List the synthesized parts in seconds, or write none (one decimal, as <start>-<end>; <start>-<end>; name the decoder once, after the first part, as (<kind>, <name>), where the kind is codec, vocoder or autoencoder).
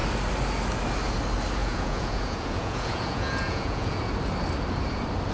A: 1.6-4.0 (vocoder, Vocos)